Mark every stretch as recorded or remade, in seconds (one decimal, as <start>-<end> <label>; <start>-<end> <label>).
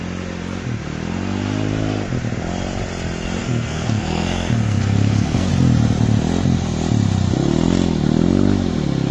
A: 0.0-3.4 recorded; 3.4-5.5 remade; 5.5-9.1 recorded